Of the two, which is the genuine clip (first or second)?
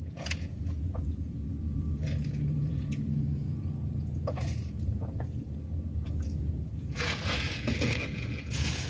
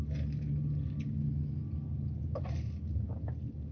second